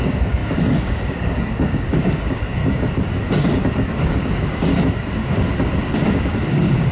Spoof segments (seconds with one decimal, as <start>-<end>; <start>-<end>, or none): 0.0-2.6; 4.0-4.7; 5.8-6.9